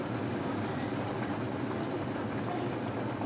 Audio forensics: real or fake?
real